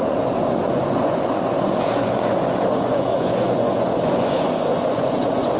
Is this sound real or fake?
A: fake